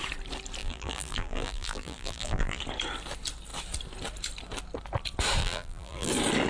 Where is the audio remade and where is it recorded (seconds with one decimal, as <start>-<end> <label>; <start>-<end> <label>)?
0.0-0.6 recorded; 0.6-2.6 remade; 2.6-5.4 recorded; 5.4-6.1 remade; 6.1-6.5 recorded